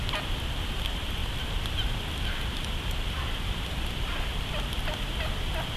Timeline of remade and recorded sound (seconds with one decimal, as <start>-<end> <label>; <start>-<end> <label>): 0.0-1.2 recorded; 1.2-4.5 remade; 4.5-5.8 recorded